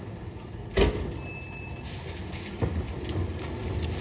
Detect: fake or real real